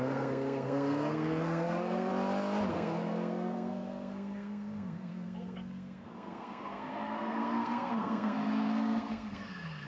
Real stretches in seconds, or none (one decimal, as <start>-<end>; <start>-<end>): 2.1-2.7